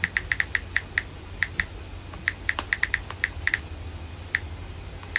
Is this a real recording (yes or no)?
yes